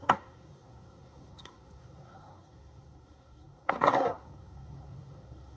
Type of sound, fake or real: fake